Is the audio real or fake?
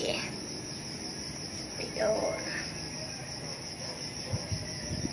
real